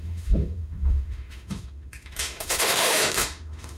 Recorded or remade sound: remade